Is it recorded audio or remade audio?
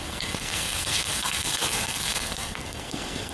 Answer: remade